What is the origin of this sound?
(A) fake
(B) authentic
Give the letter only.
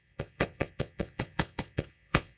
A